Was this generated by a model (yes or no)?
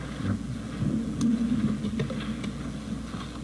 no